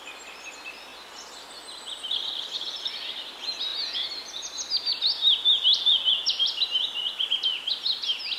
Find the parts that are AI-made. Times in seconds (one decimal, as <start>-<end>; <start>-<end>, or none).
none